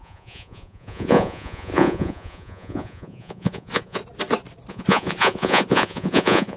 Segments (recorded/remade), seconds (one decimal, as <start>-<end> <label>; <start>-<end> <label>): 0.0-4.0 remade; 4.0-4.7 recorded; 4.7-6.6 remade